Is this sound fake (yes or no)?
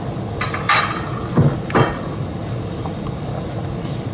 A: yes